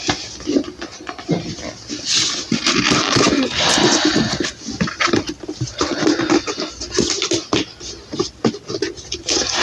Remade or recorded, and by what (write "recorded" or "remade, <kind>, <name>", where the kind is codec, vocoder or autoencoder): recorded